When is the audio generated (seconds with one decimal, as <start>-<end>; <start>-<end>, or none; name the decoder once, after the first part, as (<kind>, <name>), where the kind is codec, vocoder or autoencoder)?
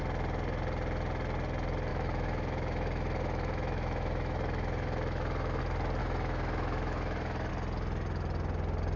1.9-5.6 (autoencoder, DAC-VAE); 6.0-7.5